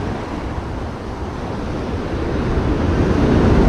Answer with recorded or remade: recorded